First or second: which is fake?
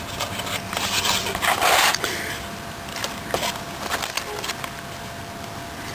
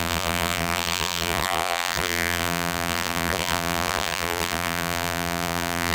second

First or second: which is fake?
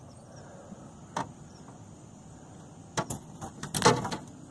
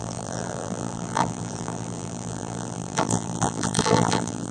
second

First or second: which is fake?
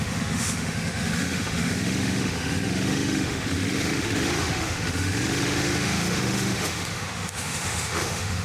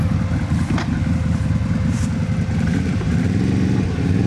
first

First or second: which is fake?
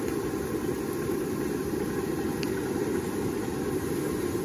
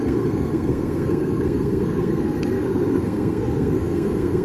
second